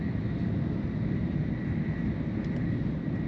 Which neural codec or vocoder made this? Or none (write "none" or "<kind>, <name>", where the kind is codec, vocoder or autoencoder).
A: none